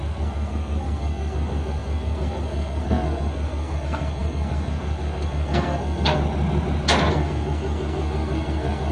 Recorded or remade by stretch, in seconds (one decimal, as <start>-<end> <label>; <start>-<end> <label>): 0.0-6.2 remade; 6.2-7.1 recorded; 7.1-8.9 remade